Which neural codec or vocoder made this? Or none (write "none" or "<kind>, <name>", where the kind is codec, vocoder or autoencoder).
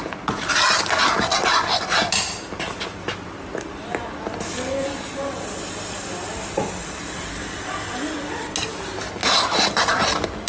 none